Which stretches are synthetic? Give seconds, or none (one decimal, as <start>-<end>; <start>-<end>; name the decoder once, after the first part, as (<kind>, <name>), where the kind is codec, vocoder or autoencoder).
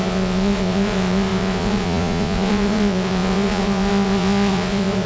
0.0-5.1 (vocoder, Vocos)